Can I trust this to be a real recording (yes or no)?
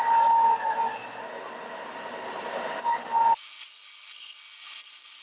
yes